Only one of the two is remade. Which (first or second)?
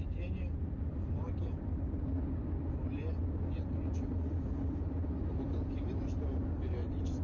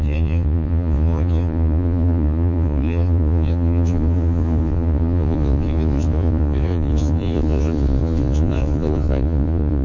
second